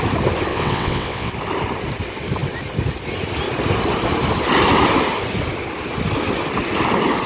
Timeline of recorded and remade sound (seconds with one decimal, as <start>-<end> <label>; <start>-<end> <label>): 0.0-0.5 recorded; 0.5-1.3 remade; 1.3-7.3 recorded